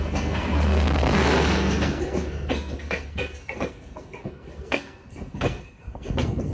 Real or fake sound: fake